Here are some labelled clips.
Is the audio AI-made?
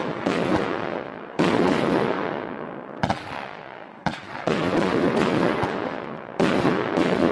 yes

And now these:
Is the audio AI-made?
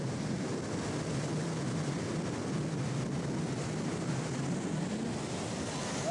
no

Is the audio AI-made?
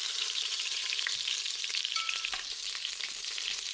yes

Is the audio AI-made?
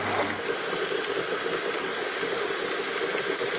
no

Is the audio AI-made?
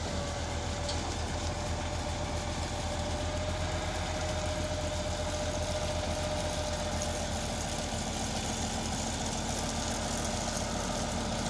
no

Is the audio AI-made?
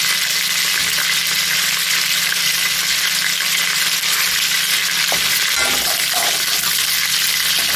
no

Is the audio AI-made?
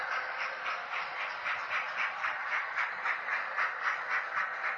no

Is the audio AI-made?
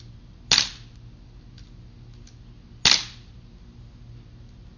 no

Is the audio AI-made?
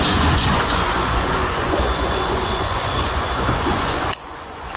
yes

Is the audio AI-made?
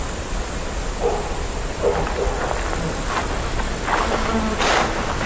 no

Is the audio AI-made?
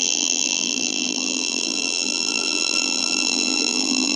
yes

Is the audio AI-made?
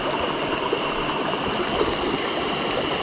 no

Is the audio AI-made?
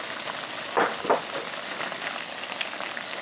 no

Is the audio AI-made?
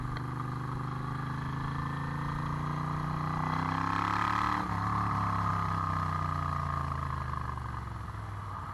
no